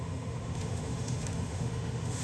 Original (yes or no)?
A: no